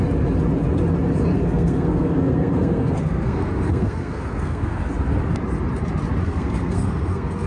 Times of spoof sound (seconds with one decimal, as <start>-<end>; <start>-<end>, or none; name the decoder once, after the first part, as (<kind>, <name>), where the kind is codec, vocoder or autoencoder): 1.3-4.8 (codec, SNAC); 6.2-7.5